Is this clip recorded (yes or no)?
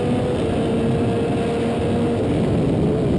yes